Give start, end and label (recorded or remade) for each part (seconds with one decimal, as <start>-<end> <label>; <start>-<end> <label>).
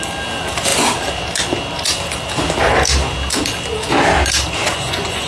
0.0-4.6 recorded; 4.6-5.3 remade